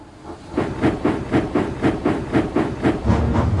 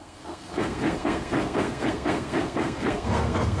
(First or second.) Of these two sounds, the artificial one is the second